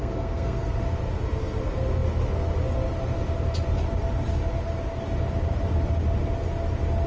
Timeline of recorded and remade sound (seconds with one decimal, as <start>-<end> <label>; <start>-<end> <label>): 0.0-0.8 remade; 0.8-7.1 recorded